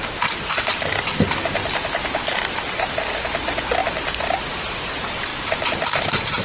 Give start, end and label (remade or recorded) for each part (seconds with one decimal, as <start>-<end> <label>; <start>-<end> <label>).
0.0-0.7 remade; 0.7-1.8 recorded; 1.8-5.3 remade; 5.3-6.0 recorded; 6.0-6.4 remade